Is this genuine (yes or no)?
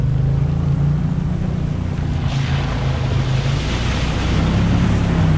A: yes